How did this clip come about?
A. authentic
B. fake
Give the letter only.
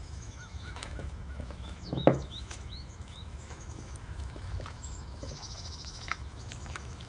B